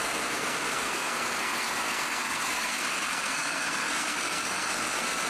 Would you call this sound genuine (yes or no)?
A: no